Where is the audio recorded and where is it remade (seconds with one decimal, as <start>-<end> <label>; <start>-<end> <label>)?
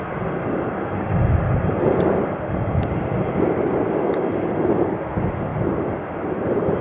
0.0-6.8 recorded